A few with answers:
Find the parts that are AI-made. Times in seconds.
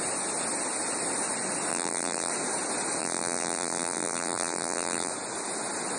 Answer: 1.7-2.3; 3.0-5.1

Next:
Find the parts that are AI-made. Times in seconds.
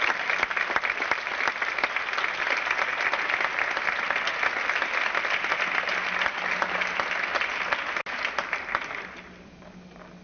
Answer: none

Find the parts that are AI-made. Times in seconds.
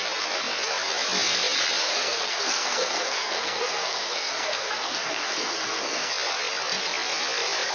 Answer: 1.8-6.1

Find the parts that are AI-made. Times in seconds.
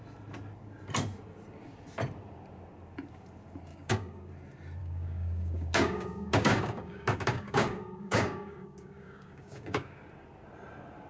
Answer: 3.7-4.3; 4.8-10.0